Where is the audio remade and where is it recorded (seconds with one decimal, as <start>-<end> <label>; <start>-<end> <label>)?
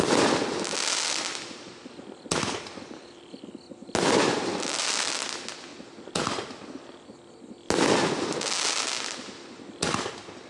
0.0-10.5 recorded